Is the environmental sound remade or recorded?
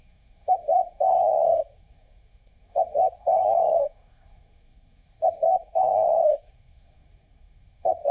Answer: remade